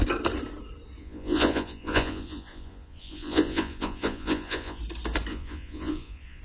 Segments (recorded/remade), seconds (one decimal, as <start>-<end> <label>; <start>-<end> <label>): 0.0-1.0 recorded; 1.0-4.8 remade; 4.8-5.3 recorded; 5.3-6.4 remade

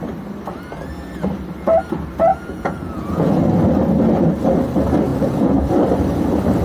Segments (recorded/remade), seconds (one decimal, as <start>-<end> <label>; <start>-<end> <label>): 0.0-2.3 recorded; 2.3-3.4 remade; 3.4-5.1 recorded; 5.1-5.7 remade; 5.7-6.6 recorded

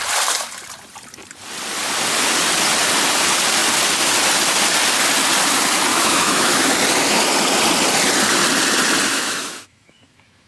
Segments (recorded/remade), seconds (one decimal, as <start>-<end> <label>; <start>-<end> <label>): 0.0-5.9 recorded; 5.9-6.7 remade; 6.7-9.1 recorded; 9.1-10.5 remade

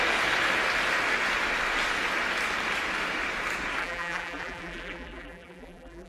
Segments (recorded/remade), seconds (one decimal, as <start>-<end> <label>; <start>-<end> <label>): 0.0-3.8 recorded; 3.8-6.1 remade

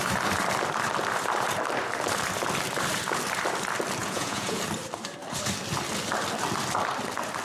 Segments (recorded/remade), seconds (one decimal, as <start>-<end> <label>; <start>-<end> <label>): 0.0-4.0 recorded; 4.0-4.6 remade; 4.6-7.4 recorded

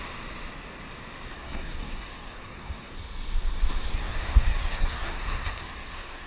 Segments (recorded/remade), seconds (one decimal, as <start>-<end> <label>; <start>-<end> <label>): 0.0-1.3 recorded; 1.3-2.9 remade; 2.9-3.9 recorded; 3.9-6.3 remade